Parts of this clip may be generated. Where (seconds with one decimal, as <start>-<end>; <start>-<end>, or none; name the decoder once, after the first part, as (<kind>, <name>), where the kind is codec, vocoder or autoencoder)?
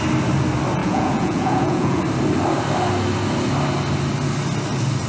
0.8-2.0 (vocoder, Vocos)